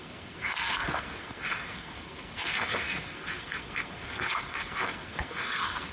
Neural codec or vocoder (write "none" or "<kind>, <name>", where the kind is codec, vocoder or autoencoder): codec, SNAC